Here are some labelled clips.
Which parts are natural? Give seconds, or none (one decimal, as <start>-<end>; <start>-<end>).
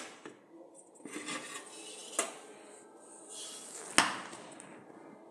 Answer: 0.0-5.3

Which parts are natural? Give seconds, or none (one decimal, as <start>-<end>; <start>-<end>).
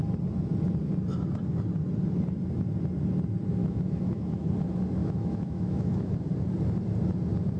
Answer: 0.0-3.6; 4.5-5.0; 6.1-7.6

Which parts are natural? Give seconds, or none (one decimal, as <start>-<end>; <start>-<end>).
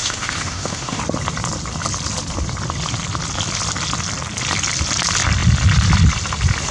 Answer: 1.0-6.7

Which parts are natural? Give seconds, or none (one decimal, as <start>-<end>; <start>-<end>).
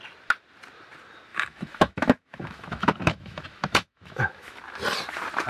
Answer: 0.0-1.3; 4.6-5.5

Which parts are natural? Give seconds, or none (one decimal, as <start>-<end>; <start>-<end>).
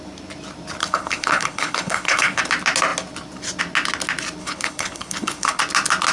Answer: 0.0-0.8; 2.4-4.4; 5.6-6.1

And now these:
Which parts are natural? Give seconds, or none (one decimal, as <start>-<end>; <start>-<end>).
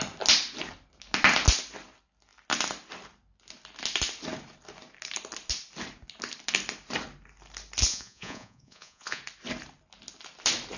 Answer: 0.0-7.9; 9.2-10.8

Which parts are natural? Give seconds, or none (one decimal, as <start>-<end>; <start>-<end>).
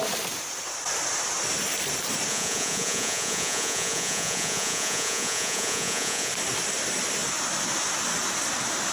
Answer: 0.0-2.3; 6.3-8.9